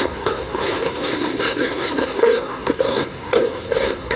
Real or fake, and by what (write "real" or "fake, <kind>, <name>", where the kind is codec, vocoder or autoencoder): fake, codec, SNAC